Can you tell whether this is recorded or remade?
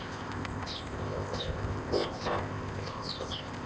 remade